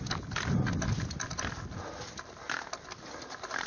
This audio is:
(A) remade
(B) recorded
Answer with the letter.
B